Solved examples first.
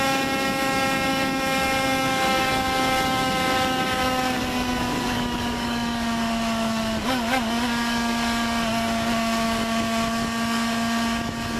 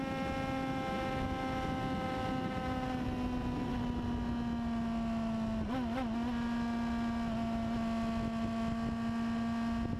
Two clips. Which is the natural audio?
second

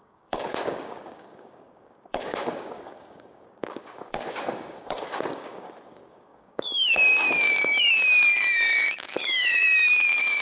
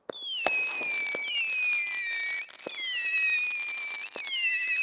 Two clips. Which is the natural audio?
second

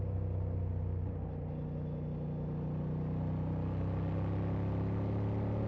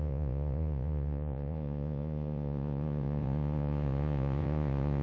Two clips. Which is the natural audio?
first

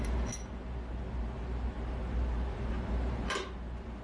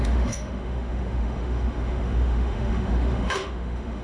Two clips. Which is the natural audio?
first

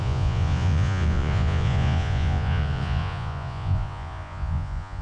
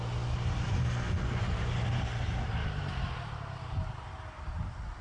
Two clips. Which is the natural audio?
second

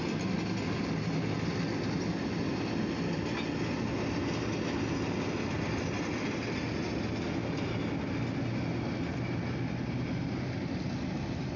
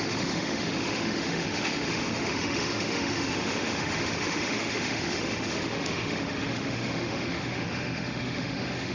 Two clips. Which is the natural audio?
first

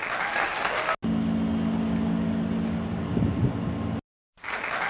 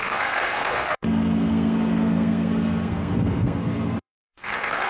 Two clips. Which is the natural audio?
first